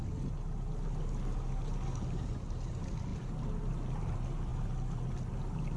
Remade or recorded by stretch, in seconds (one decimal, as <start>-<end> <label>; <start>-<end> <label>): 0.0-5.8 recorded